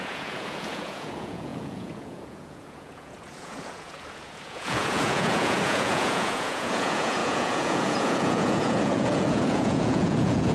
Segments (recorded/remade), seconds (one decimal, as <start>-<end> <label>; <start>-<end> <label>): 0.0-10.5 remade